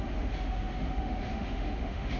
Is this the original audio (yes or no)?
no